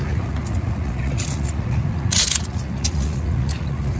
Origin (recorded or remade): remade